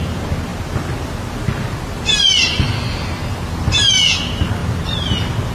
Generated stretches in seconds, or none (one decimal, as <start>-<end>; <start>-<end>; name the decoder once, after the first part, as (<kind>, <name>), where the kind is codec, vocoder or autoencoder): none